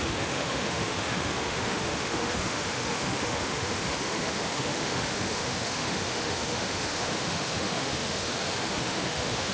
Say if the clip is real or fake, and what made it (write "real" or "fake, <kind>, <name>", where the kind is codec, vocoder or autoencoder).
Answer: fake, autoencoder, DAC-VAE